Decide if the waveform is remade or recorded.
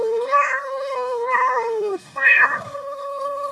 remade